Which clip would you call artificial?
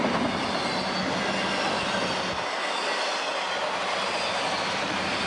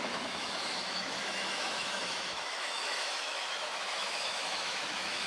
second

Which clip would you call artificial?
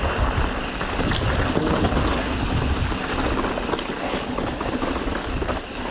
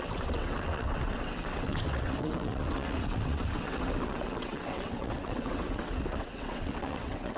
second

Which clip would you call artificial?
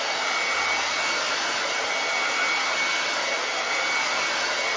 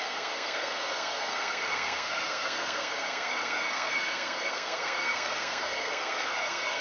second